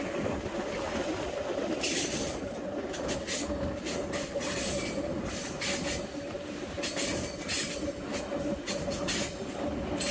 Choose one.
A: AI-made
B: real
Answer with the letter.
B